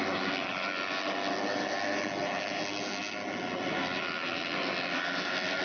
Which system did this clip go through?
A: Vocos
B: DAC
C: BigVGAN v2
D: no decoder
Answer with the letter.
D